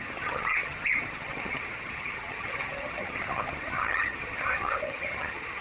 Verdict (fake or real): fake